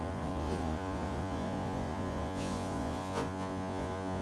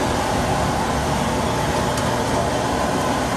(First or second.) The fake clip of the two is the first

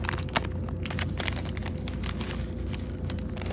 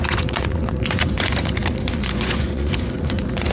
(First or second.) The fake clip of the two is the second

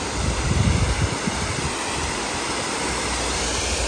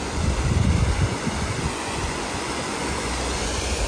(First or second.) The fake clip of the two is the second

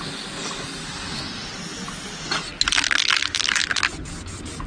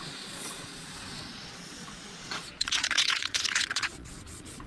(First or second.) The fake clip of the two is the second